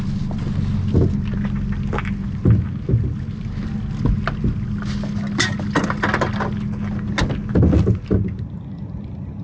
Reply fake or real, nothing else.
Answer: real